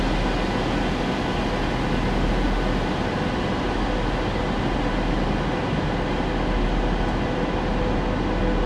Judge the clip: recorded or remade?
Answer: recorded